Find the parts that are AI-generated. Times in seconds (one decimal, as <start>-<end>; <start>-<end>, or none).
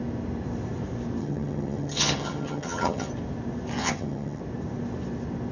1.2-3.1; 3.8-4.4